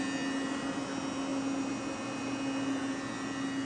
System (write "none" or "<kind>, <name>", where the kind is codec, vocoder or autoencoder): none